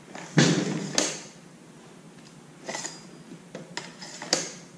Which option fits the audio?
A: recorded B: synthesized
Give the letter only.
A